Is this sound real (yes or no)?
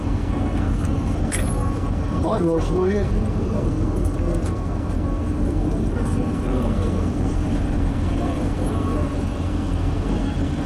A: no